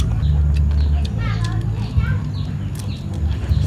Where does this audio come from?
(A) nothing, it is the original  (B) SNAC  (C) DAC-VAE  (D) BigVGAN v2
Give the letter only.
A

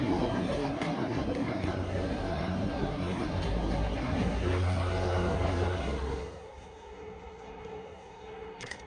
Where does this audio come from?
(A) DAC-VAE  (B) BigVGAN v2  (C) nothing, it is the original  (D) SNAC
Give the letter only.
D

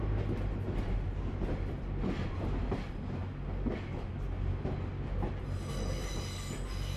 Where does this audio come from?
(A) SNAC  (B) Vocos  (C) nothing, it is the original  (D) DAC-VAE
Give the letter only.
C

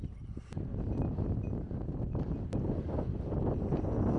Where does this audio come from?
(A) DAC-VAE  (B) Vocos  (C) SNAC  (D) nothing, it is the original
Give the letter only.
D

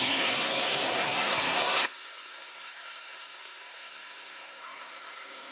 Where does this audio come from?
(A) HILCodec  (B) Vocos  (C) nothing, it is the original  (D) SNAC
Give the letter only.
D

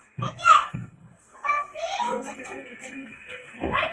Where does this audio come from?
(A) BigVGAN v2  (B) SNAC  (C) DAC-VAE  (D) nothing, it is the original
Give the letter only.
B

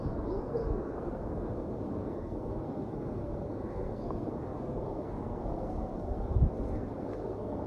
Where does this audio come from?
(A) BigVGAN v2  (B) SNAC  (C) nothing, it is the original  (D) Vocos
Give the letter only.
B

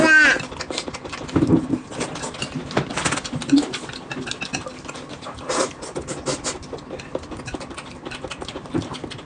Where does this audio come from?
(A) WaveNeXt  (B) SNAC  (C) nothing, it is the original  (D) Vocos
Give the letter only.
C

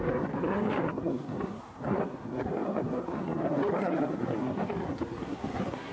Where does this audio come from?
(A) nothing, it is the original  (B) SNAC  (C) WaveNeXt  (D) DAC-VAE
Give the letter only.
B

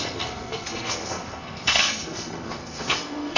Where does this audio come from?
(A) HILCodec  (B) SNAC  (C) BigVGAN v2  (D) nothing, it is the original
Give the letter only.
B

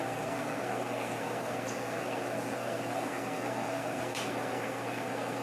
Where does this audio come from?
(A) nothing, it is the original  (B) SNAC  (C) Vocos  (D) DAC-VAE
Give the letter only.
B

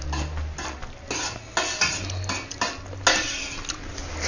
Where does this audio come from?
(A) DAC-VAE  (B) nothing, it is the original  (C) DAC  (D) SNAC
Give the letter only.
B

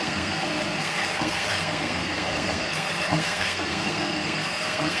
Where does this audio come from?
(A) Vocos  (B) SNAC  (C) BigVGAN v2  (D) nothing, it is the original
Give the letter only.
B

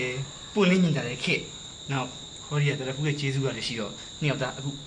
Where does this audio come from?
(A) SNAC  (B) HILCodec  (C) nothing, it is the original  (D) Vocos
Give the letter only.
C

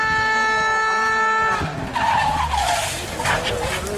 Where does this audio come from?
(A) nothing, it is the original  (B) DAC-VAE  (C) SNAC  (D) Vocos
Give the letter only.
A